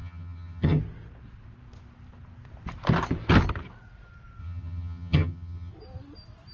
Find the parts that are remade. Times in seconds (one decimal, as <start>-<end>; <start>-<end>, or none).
0.0-0.8; 4.4-5.7